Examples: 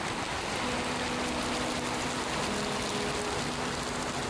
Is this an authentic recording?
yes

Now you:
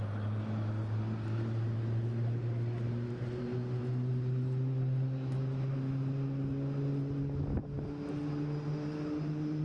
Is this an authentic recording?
yes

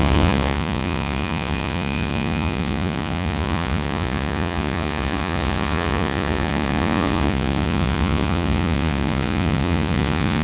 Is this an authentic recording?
no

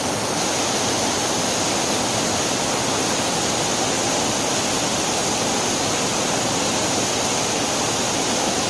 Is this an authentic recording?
yes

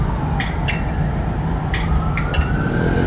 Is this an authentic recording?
yes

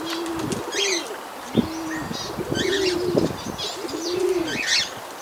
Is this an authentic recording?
yes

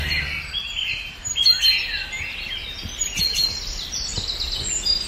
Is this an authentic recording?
yes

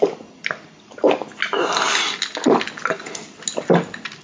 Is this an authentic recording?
yes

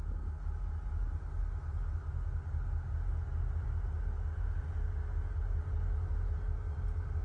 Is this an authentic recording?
yes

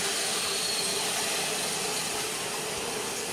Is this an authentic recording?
yes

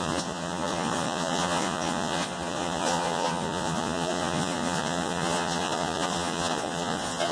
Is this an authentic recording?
no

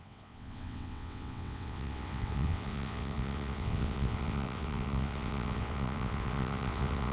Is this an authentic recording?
no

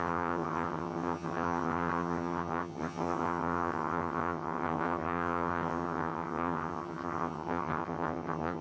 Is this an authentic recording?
no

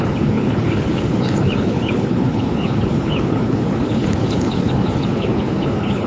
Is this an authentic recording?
no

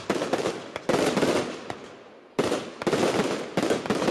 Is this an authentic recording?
yes